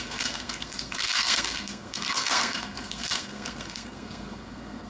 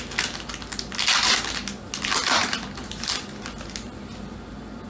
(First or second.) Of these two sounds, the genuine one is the second